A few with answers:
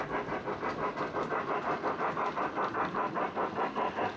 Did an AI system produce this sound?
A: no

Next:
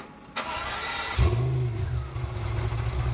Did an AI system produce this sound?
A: no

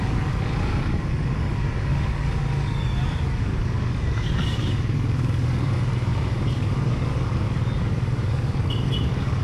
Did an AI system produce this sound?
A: yes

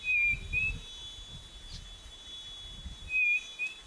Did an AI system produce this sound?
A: no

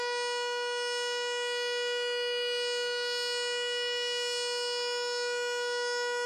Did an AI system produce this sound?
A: no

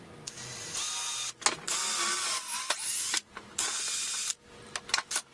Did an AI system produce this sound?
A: no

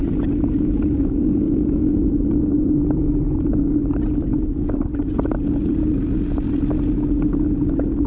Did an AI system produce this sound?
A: no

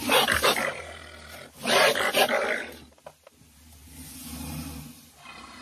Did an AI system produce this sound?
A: no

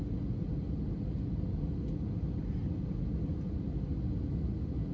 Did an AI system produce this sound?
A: no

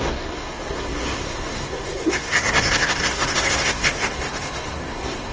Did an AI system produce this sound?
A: yes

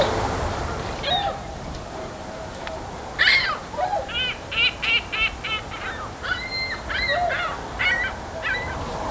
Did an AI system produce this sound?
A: no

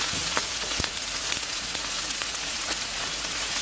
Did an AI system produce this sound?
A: yes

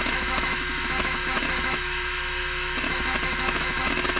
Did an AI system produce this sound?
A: yes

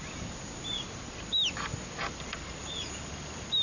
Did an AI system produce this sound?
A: no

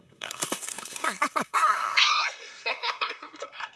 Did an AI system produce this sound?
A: yes